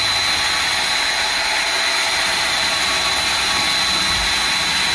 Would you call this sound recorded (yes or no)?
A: yes